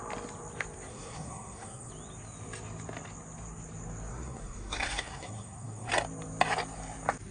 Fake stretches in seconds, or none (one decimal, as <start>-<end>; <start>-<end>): 0.9-1.9; 4.1-5.9